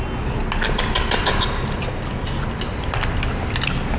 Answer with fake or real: real